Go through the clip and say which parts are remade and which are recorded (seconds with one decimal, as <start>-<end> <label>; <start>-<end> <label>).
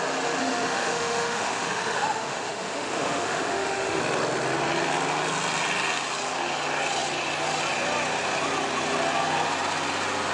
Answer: 0.0-0.4 recorded; 0.4-4.0 remade; 4.0-10.3 recorded